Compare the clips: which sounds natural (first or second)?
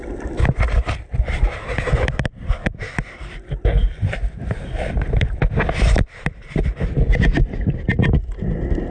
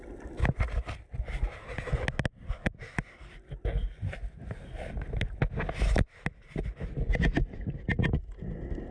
second